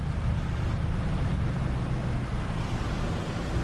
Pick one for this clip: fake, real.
real